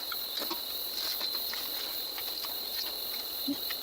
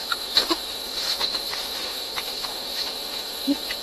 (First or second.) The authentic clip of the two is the first